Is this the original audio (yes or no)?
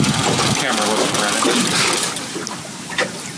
yes